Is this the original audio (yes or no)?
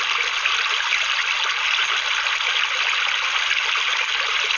yes